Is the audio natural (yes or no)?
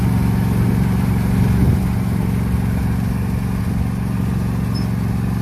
yes